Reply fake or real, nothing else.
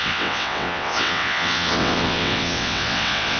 fake